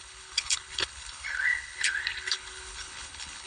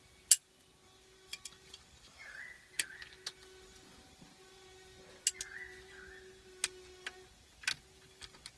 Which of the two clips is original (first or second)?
second